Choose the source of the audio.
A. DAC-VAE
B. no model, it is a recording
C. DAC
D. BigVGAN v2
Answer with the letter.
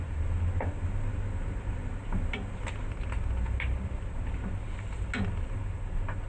B